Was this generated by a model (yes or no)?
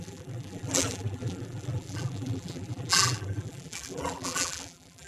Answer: yes